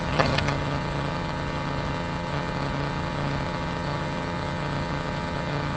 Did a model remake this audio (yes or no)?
yes